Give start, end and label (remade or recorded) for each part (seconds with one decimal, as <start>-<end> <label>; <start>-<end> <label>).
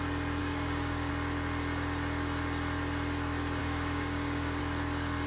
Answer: 0.0-0.4 recorded; 0.4-1.1 remade; 1.1-3.6 recorded; 3.6-4.6 remade; 4.6-5.3 recorded